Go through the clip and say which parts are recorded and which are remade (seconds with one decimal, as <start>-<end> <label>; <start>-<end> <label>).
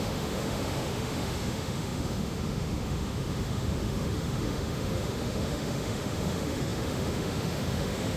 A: 0.0-8.2 remade